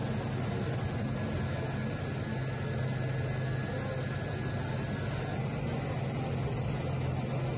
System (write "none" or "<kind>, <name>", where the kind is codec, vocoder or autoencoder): none